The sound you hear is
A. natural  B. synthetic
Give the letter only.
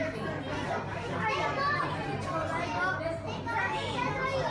A